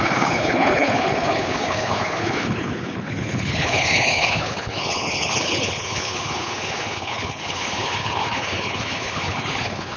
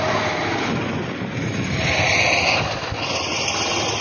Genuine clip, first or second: second